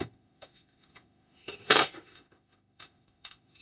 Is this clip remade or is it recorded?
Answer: remade